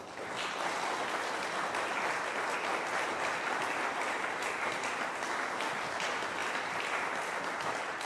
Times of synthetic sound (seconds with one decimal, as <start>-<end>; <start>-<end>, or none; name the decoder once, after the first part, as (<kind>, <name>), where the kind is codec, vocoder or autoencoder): none